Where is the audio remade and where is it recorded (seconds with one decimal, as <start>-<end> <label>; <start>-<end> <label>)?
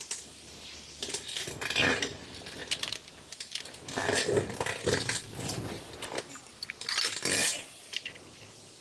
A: 0.0-7.4 recorded; 7.4-8.4 remade; 8.4-8.8 recorded